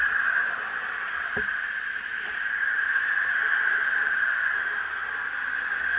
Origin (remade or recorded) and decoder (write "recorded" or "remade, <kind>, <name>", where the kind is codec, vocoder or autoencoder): remade, vocoder, BigVGAN v2